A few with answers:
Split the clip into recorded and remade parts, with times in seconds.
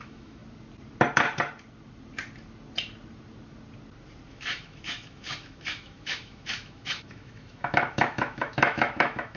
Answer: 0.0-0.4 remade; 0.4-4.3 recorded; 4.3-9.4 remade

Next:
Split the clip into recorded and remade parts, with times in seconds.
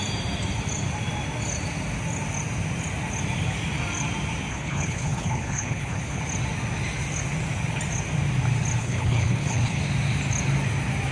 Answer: 0.0-4.5 recorded; 4.5-6.2 remade; 6.2-8.8 recorded; 8.8-9.8 remade; 9.8-11.1 recorded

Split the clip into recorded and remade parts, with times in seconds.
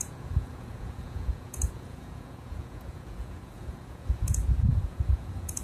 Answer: 0.0-5.6 remade